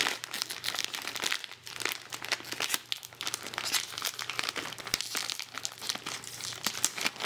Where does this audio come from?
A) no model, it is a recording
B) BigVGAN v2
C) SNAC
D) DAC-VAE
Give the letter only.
A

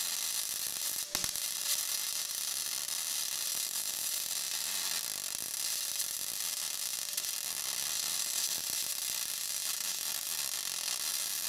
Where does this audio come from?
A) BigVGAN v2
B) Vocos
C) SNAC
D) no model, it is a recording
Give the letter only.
D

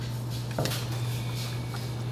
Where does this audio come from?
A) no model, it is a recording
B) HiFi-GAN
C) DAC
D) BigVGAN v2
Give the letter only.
A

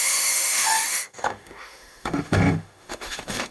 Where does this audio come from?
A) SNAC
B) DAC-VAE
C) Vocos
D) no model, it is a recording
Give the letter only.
B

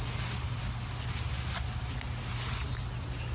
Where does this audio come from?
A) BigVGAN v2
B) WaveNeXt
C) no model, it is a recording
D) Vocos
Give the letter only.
C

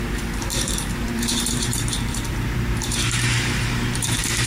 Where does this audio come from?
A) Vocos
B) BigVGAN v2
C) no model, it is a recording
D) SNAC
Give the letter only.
B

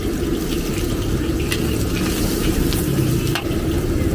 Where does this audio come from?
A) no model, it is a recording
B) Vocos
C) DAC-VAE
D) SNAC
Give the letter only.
A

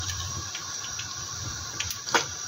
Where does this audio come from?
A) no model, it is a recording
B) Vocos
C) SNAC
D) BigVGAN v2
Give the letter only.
D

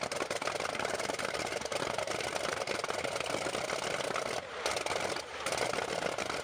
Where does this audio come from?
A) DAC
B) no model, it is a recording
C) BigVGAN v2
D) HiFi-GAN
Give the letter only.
B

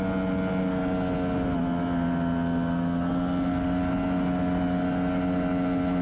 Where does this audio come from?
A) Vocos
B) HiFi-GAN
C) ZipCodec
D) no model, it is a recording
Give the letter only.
D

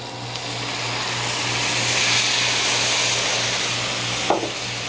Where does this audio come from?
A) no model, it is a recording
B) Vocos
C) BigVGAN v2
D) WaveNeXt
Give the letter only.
A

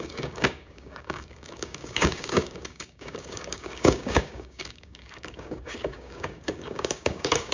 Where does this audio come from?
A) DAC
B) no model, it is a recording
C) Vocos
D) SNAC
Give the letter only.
A